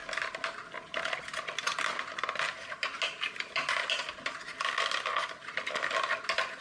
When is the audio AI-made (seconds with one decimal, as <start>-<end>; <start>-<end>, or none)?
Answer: none